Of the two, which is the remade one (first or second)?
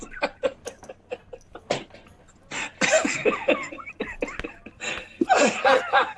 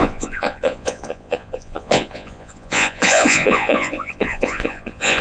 second